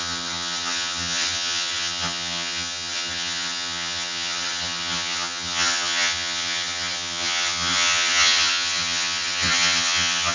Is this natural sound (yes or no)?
no